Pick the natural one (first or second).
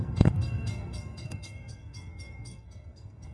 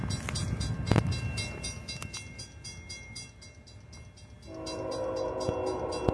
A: second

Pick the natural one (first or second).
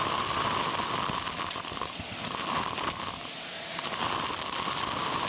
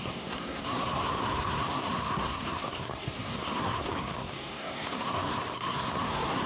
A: first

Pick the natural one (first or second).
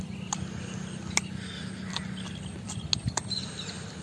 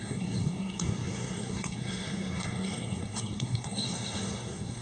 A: first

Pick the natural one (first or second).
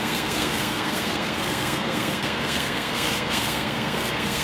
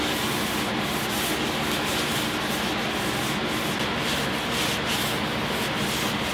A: second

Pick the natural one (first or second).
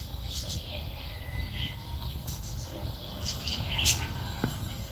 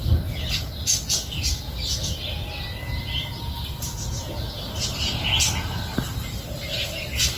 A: second